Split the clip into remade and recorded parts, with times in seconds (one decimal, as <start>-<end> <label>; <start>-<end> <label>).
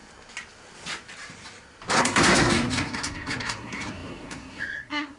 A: 0.0-2.0 recorded; 2.0-5.2 remade